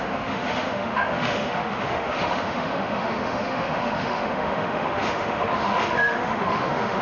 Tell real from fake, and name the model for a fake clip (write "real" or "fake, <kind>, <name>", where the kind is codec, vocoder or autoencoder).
fake, autoencoder, DAC-VAE